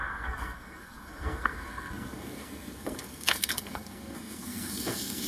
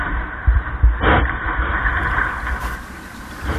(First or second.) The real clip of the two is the second